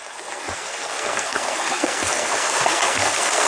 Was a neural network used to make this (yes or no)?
yes